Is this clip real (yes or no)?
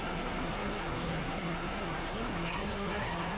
no